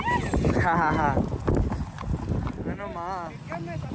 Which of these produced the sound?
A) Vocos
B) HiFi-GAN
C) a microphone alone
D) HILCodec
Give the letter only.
C